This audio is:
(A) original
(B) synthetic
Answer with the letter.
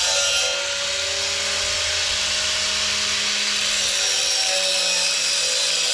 A